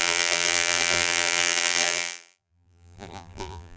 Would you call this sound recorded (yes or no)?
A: no